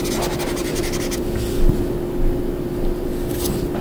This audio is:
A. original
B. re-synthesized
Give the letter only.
A